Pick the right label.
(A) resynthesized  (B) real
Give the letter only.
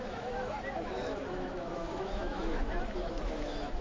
A